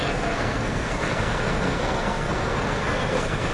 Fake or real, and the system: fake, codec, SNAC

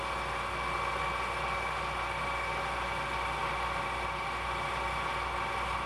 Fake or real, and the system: real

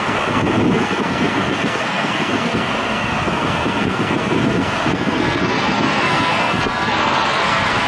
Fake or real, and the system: fake, codec, SNAC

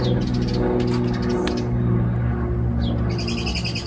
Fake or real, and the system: real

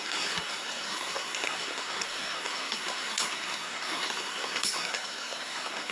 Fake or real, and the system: fake, codec, SNAC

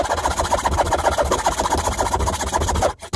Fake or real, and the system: real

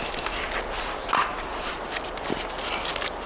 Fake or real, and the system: real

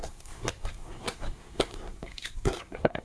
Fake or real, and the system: fake, codec, SNAC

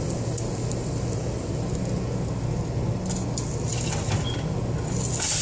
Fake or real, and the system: real